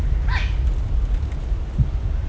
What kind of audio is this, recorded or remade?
recorded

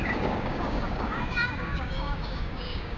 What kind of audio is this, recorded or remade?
remade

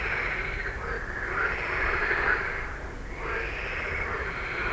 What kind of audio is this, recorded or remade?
recorded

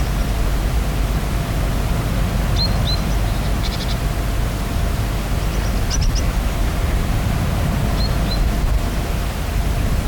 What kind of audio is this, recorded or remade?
recorded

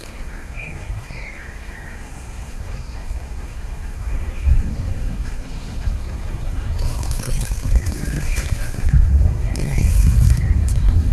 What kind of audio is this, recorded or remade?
remade